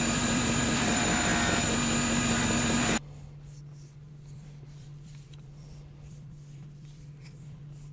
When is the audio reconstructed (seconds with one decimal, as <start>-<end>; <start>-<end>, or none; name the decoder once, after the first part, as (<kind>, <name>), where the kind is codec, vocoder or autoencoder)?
0.0-1.3 (vocoder, BigVGAN v2); 4.1-7.9